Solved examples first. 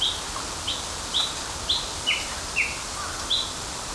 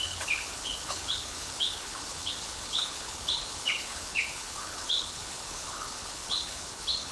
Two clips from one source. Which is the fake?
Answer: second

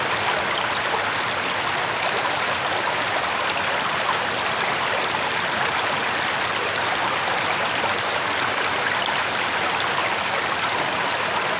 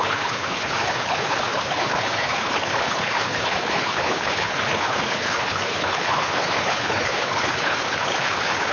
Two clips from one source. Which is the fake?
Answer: second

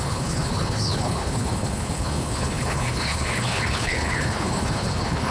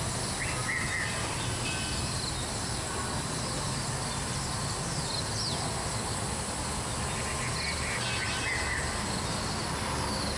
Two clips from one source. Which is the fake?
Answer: first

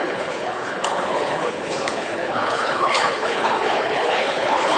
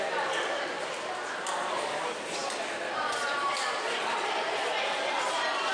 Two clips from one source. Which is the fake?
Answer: first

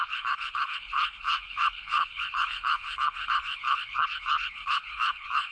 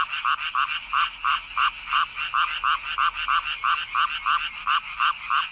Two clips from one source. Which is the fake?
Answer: first